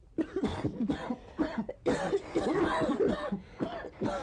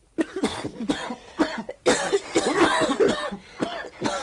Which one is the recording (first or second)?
second